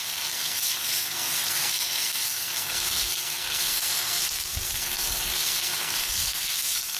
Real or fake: fake